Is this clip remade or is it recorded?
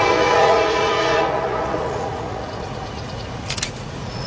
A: remade